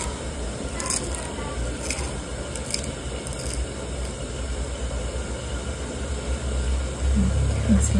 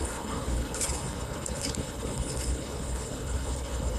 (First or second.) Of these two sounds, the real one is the first